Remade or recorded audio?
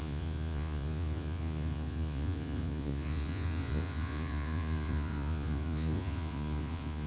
remade